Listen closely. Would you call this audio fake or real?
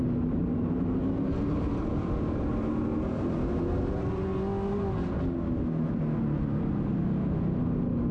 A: real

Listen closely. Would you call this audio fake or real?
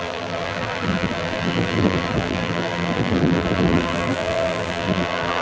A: fake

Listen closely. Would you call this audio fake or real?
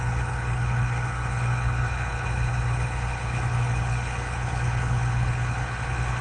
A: fake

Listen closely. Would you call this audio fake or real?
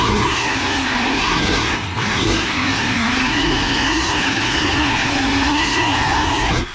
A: fake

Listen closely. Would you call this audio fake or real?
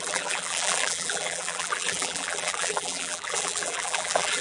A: fake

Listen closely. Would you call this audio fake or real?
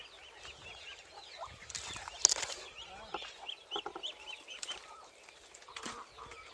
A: real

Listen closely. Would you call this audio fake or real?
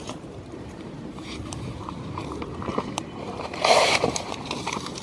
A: fake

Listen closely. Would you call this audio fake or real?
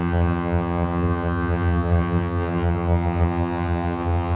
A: fake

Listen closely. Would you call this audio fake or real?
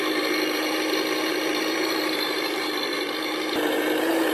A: fake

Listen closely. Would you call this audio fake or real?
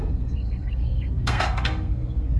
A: fake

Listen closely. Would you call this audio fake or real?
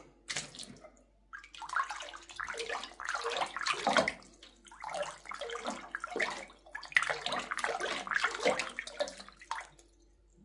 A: real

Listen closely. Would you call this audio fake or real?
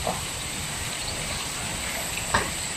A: fake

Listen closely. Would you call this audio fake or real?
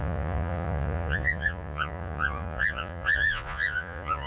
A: fake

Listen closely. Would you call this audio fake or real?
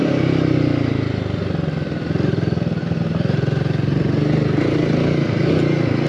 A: real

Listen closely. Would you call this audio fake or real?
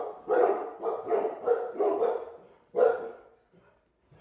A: fake